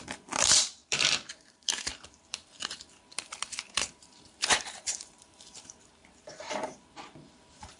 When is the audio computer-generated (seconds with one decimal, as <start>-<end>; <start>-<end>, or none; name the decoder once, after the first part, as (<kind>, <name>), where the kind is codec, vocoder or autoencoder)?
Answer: 0.0-7.8 (vocoder, BigVGAN v2)